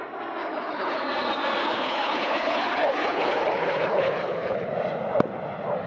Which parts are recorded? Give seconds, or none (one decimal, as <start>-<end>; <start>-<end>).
0.0-0.4; 1.0-1.6; 4.7-5.9